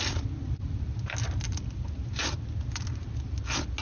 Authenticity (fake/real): real